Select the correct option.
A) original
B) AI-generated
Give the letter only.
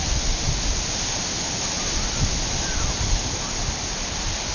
A